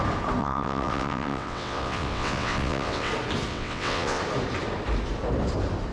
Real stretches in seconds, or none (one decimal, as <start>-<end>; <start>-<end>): 0.0-0.4; 3.1-3.5; 4.2-5.9